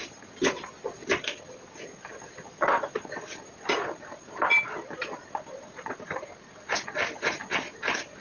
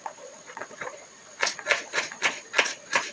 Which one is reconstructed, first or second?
second